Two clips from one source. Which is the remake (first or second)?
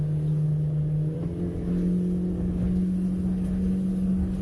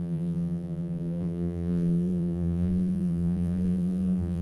second